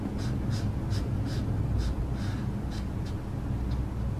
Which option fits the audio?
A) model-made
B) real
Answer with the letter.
B